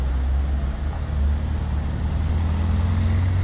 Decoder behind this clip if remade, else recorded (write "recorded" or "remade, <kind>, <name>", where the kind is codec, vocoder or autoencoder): recorded